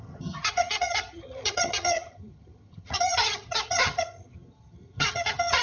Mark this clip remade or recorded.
remade